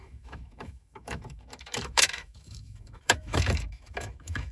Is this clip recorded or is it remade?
remade